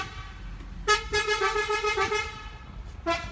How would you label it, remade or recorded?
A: recorded